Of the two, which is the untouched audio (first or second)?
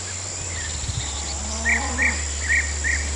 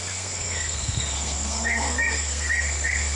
first